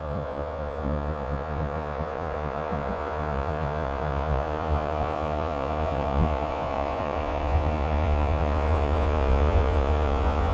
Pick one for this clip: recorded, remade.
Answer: remade